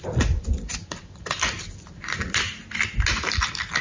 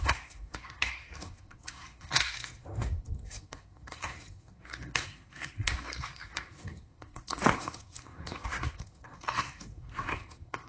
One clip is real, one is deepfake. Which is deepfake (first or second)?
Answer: second